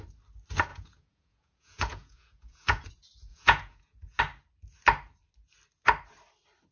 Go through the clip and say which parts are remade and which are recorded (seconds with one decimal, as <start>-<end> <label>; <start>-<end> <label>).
0.0-0.7 recorded; 0.7-2.9 remade; 2.9-3.3 recorded; 3.3-4.2 remade; 4.2-6.7 recorded